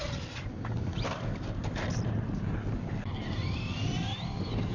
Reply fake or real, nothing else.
real